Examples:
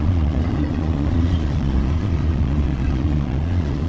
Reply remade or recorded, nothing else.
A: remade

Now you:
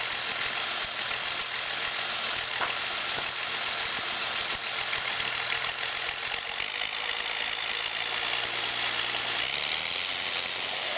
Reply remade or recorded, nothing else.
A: recorded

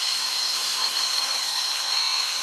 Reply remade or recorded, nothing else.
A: remade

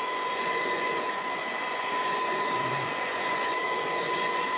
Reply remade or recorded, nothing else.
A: remade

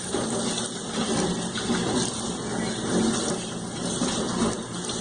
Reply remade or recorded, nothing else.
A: recorded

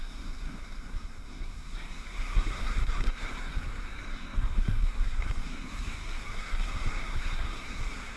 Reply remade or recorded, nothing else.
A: remade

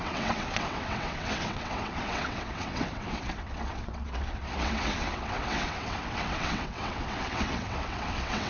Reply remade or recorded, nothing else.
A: remade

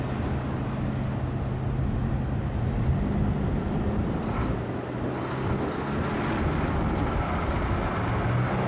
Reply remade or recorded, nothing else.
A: recorded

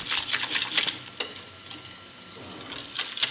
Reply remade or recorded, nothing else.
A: recorded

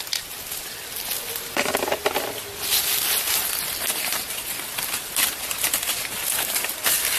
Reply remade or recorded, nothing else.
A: recorded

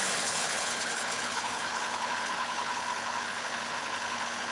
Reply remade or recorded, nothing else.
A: remade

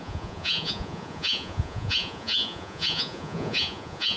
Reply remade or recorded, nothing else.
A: remade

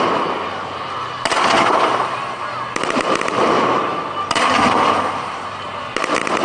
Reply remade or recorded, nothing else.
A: recorded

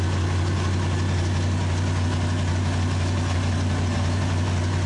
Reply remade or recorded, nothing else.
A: recorded